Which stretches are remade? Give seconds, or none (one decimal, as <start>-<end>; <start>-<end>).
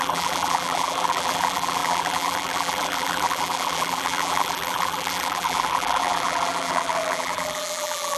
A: 0.0-8.2